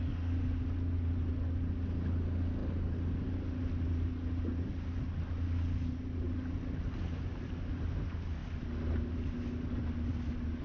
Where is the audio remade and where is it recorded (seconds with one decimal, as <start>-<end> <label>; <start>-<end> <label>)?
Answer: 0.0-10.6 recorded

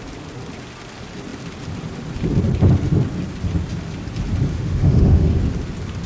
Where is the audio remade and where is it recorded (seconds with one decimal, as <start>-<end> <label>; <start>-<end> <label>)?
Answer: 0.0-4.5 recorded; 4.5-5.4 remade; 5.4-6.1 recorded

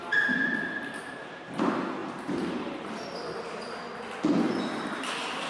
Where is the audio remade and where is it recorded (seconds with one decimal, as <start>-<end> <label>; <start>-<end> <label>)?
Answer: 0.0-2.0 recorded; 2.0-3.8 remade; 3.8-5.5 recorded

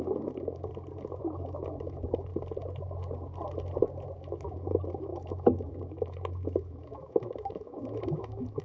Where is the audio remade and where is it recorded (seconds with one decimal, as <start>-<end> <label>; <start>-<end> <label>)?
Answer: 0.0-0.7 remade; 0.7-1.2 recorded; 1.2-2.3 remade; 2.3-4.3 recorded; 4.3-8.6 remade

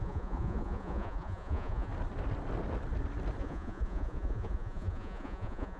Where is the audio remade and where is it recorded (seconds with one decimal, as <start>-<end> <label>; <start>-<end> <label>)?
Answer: 0.0-1.9 remade; 1.9-3.4 recorded; 3.4-5.8 remade

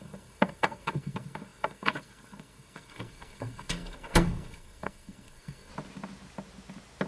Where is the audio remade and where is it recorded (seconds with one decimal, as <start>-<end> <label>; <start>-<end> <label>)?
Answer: 0.0-5.7 remade; 5.7-7.1 recorded

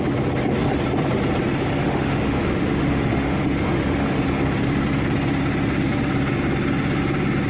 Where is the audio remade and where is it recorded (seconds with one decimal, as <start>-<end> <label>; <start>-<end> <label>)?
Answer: 0.0-1.8 recorded; 1.8-4.2 remade; 4.2-7.5 recorded

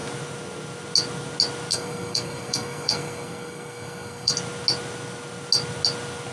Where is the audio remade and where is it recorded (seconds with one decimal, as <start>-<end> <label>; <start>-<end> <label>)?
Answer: 0.0-1.7 recorded; 1.7-4.3 remade; 4.3-6.3 recorded